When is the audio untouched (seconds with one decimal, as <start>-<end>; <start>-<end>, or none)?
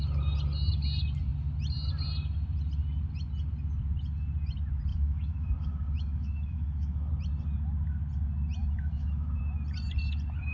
0.0-4.9; 7.1-8.6; 9.4-10.5